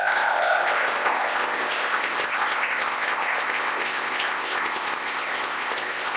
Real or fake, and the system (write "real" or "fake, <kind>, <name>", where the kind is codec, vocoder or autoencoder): fake, codec, ZipCodec